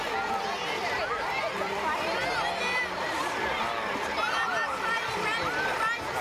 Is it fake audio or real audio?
real